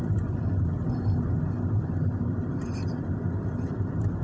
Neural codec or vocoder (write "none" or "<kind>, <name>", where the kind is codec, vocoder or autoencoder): none